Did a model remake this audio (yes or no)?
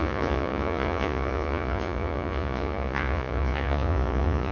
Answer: yes